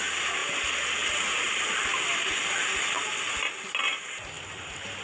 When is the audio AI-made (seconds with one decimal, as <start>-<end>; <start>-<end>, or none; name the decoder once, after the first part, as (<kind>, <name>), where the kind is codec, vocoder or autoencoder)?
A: none